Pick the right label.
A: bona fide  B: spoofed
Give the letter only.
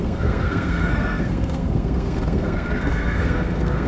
B